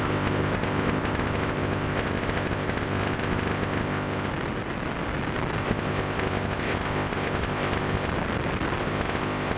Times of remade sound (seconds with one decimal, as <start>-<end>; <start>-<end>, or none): 0.0-4.3; 5.6-8.1; 8.8-9.6